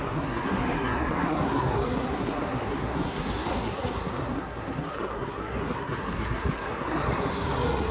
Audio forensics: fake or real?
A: fake